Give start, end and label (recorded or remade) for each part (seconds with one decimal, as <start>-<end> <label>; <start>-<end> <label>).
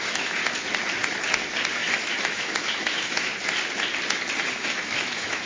0.0-0.4 remade; 0.4-1.7 recorded; 1.7-3.3 remade; 3.3-4.4 recorded; 4.4-5.5 remade